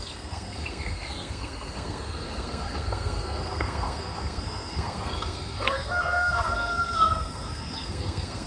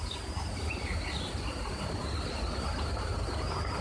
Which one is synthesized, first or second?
first